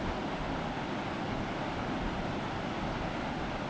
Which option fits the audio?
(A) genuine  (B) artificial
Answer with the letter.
A